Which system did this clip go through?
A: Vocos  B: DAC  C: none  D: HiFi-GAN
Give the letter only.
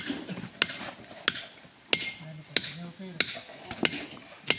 C